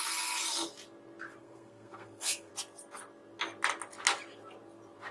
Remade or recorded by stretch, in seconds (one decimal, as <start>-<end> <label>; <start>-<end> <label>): 0.0-1.4 recorded; 1.4-2.5 remade; 2.5-5.1 recorded